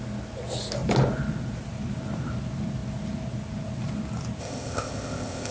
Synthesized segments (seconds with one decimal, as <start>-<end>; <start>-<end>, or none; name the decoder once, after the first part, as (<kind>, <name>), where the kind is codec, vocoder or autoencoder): 4.4-5.5 (codec, ZipCodec)